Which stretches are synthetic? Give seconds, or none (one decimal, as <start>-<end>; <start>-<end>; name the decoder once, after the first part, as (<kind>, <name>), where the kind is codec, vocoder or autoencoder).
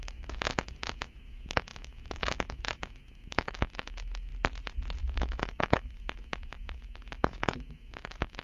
0.0-4.3 (autoencoder, DAC-VAE); 5.0-8.4